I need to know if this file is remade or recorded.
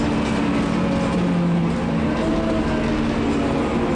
recorded